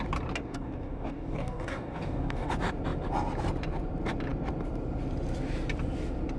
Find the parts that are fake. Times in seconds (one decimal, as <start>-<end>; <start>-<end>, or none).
0.4-2.5